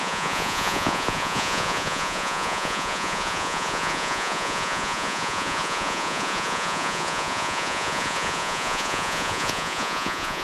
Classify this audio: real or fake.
fake